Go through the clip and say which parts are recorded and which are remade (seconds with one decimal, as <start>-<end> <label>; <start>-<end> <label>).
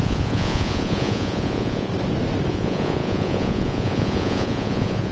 0.0-1.9 remade; 1.9-2.5 recorded; 2.5-5.1 remade